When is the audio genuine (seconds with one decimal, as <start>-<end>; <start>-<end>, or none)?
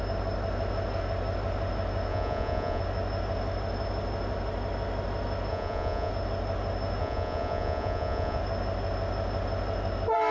0.0-2.1; 2.8-5.5; 6.1-7.0; 8.4-10.3